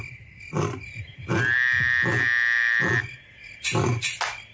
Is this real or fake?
real